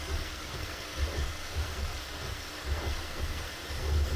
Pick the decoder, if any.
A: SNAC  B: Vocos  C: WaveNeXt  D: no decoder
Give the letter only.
A